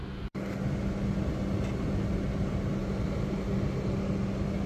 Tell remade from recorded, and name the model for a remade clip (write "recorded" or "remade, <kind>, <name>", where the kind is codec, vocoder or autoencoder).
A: recorded